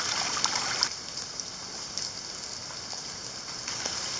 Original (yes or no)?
yes